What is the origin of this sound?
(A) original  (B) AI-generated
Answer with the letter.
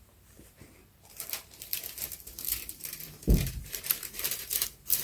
B